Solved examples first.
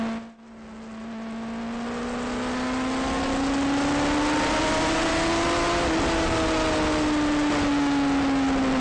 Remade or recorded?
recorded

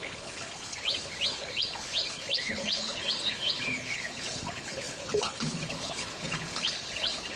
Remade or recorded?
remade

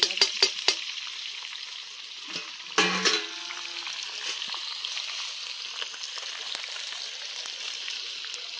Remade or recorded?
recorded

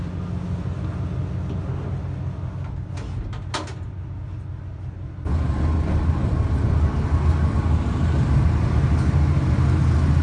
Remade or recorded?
recorded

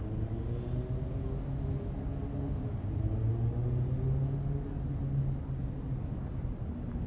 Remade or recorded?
recorded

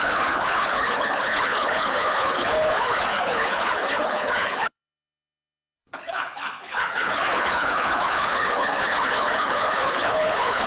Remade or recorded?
remade